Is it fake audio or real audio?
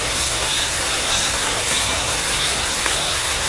fake